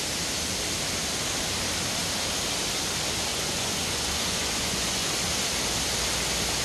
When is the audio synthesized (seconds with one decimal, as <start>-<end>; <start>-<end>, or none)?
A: 3.3-5.1